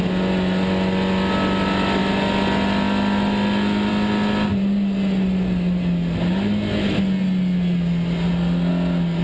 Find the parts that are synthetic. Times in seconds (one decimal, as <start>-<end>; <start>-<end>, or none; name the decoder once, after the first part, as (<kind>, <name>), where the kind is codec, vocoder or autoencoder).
none